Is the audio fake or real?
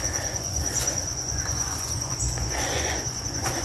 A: fake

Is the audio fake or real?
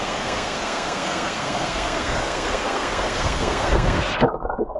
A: fake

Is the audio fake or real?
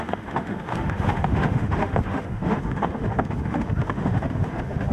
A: fake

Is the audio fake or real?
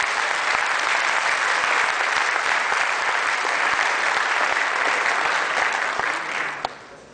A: real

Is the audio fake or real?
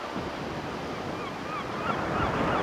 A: real